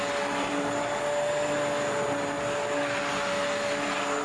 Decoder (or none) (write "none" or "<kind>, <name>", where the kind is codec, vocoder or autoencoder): none